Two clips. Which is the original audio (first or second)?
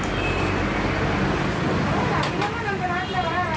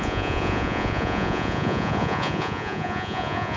first